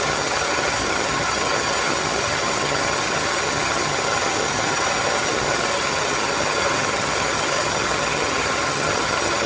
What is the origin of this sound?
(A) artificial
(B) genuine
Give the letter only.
A